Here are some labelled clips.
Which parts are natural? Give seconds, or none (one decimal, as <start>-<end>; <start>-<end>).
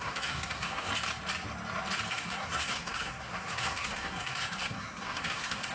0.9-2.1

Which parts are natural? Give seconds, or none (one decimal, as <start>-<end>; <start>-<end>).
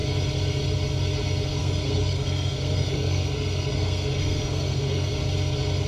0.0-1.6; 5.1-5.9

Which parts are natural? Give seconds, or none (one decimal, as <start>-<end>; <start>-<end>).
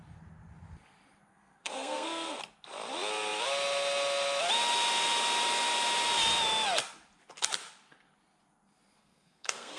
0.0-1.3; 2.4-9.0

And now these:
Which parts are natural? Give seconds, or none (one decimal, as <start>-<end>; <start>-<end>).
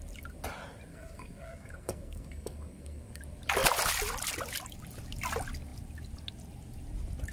0.0-0.9; 3.2-7.3